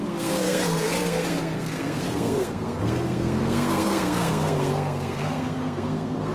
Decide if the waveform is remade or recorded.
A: remade